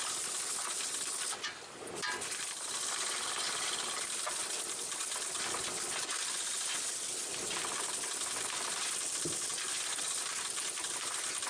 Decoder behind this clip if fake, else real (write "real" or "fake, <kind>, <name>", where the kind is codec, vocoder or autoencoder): real